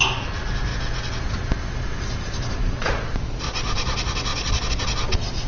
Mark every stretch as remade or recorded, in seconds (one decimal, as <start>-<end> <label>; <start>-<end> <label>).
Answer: 0.0-2.6 recorded; 2.6-3.7 remade; 3.7-4.3 recorded; 4.3-4.8 remade; 4.8-5.5 recorded